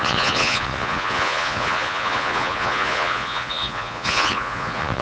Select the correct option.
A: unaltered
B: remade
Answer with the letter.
B